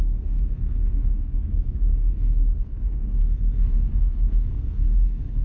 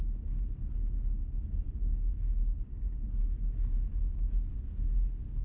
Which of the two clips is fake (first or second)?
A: first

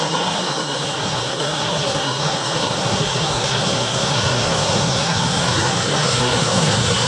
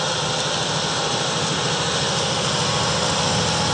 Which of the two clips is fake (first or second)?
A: first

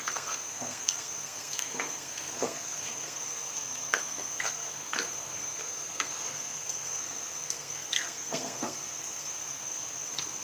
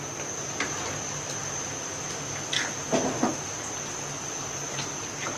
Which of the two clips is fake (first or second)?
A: first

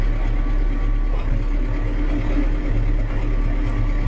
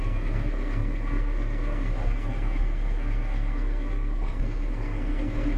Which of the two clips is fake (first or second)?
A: second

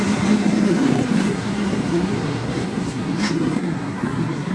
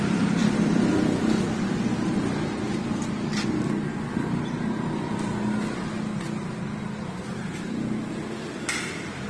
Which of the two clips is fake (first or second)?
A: first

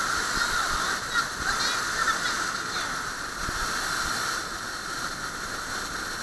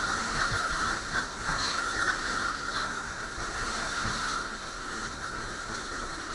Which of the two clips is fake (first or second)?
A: second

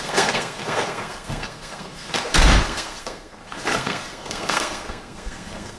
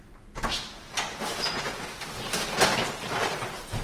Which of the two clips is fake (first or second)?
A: first